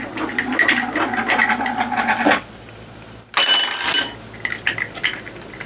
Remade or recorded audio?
recorded